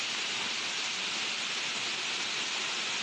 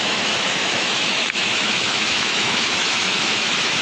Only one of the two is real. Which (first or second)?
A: first